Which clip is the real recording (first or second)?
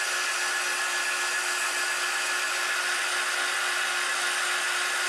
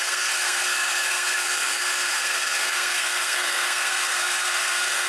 first